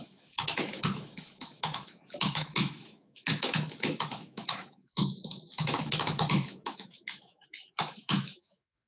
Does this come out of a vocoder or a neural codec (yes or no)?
yes